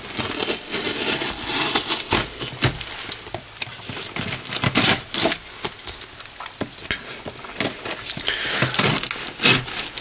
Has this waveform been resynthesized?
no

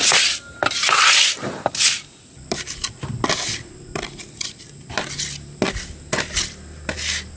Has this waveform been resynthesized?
no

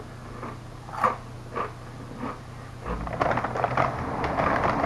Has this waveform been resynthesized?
no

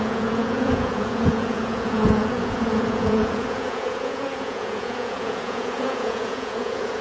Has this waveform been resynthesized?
yes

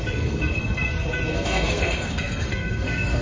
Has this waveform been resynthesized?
yes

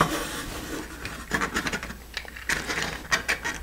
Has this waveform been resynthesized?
no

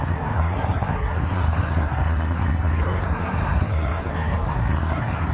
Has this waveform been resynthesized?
yes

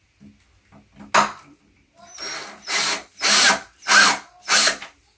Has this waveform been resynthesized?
no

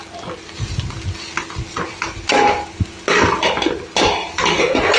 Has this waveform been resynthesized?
no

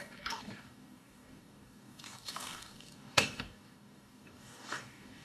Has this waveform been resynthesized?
yes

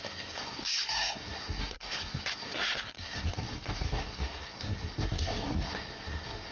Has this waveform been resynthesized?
yes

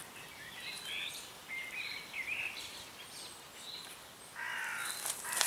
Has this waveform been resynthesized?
no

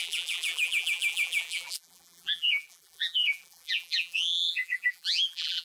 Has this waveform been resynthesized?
yes